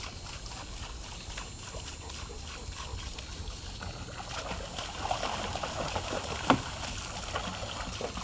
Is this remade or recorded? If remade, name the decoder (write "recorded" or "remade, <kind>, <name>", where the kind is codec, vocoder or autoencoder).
recorded